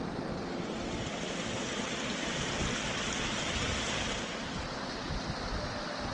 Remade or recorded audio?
recorded